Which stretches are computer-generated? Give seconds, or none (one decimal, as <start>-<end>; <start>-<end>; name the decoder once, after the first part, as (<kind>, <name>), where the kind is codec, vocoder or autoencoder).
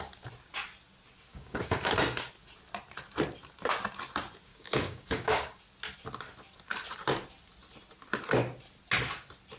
1.3-1.9 (codec, DAC); 4.5-5.6